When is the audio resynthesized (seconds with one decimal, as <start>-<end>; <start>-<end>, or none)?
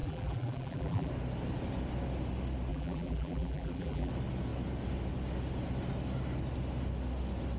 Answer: 0.0-1.1; 2.7-4.1